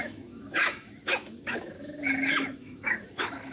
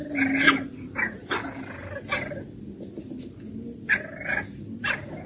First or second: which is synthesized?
first